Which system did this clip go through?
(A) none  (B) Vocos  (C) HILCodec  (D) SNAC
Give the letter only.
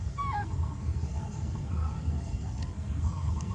D